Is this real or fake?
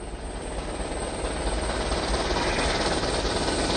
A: real